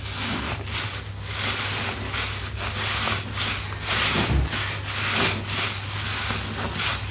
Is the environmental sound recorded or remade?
recorded